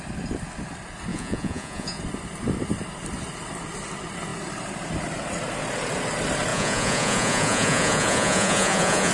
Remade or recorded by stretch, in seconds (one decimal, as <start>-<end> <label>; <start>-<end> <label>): 0.0-1.1 recorded; 1.1-2.0 remade; 2.0-6.5 recorded; 6.5-9.1 remade